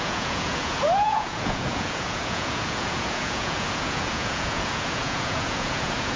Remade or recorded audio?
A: remade